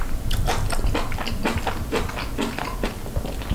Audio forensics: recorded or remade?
recorded